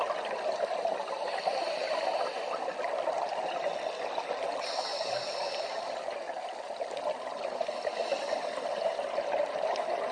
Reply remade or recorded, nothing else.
recorded